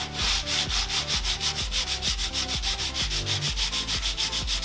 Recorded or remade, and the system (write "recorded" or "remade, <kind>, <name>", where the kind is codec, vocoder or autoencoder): recorded